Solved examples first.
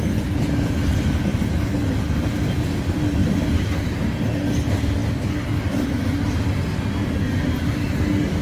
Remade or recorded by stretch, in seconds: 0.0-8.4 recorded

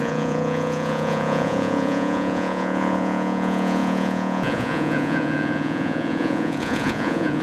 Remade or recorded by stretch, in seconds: 0.0-7.4 remade